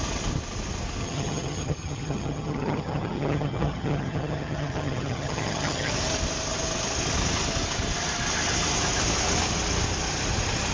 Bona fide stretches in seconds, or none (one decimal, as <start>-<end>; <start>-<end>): 0.0-1.0; 5.9-10.7